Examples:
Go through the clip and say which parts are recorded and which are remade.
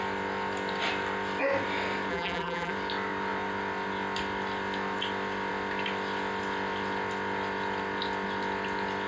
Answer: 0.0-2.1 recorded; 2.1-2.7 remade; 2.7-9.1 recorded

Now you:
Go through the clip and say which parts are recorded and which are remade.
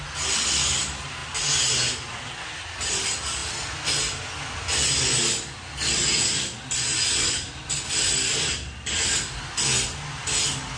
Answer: 0.0-10.8 recorded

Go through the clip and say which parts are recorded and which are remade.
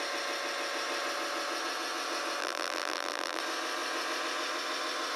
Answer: 0.0-2.4 recorded; 2.4-3.4 remade; 3.4-5.2 recorded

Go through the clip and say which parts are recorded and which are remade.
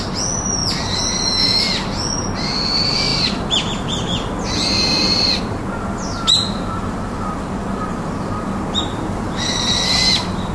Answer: 0.0-10.5 recorded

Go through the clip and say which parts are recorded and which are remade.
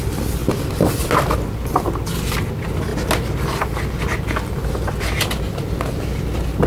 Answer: 0.0-2.9 recorded; 2.9-4.6 remade; 4.6-6.7 recorded